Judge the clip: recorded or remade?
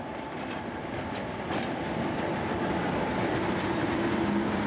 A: remade